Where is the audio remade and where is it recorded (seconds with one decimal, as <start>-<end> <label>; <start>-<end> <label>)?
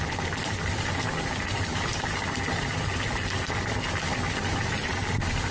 0.0-5.5 recorded